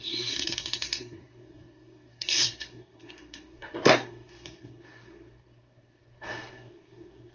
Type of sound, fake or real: fake